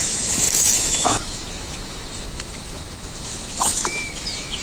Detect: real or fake fake